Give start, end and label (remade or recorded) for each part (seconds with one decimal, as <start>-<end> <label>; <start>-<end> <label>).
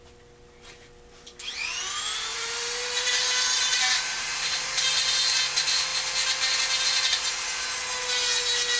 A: 0.0-2.3 recorded; 2.3-4.9 remade; 4.9-8.8 recorded